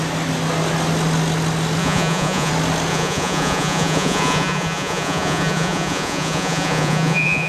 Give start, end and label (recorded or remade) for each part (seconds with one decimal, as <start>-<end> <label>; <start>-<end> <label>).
0.0-1.8 recorded; 1.8-2.5 remade; 2.5-2.9 recorded; 2.9-7.5 remade